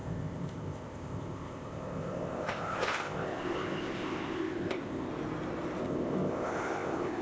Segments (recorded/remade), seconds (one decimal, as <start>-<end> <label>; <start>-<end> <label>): 0.0-5.1 remade; 5.1-5.8 recorded; 5.8-7.2 remade